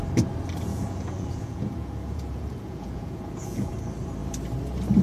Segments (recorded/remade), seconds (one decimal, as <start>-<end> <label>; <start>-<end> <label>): 0.0-0.7 recorded; 0.7-3.7 remade; 3.7-5.0 recorded